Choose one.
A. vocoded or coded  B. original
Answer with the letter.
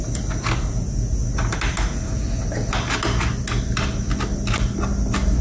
B